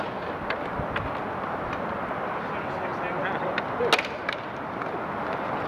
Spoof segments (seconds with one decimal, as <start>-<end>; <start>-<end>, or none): none